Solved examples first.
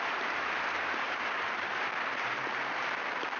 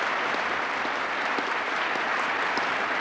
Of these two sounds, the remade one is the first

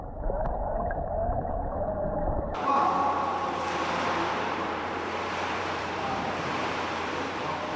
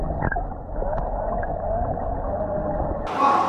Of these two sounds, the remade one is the first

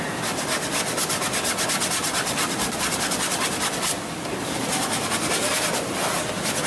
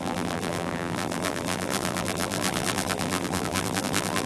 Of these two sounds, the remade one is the second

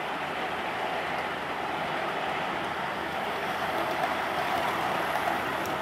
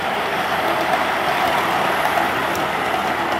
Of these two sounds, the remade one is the first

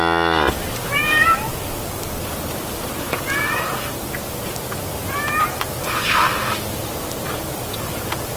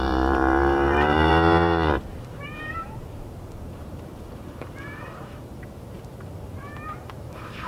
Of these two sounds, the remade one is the second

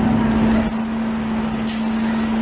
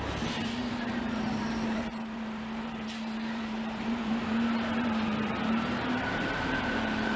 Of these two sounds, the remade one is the second